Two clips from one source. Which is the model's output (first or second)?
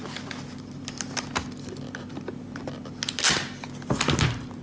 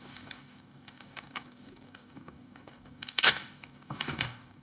second